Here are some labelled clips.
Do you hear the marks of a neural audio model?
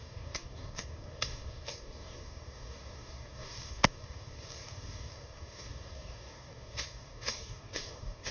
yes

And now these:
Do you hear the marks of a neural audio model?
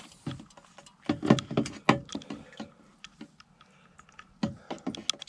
no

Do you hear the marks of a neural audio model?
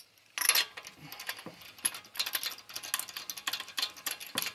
no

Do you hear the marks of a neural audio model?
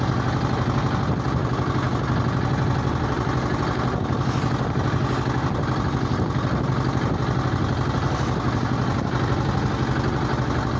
no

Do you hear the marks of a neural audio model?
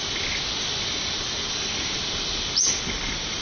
no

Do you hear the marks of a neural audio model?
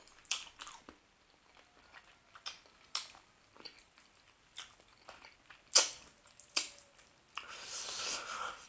no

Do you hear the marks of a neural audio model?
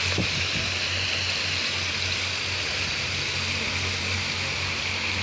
no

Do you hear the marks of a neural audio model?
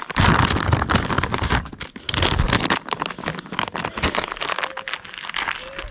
no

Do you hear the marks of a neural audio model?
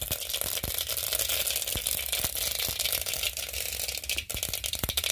no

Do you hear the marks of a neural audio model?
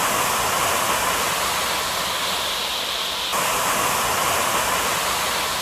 no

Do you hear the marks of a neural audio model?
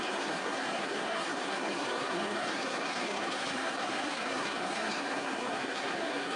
yes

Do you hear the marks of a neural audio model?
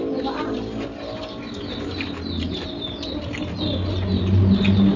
no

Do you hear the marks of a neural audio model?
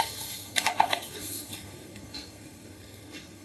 yes